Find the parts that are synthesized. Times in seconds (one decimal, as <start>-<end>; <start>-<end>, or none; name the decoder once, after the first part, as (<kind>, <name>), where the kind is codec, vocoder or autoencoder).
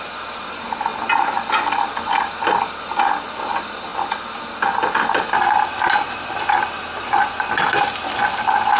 none